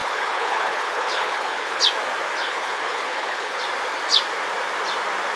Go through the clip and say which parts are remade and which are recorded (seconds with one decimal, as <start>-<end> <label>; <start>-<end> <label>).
0.0-1.8 remade; 1.8-2.4 recorded; 2.4-3.6 remade; 3.6-5.4 recorded